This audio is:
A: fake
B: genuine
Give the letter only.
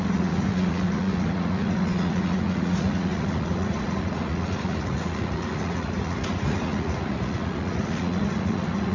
A